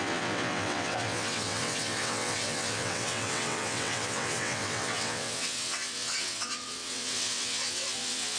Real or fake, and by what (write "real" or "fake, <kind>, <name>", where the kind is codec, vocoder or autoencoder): fake, vocoder, WaveNeXt